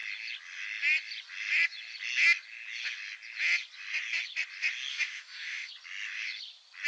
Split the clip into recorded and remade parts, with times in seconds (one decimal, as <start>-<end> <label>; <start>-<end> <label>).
0.0-4.9 recorded; 4.9-5.7 remade; 5.7-6.9 recorded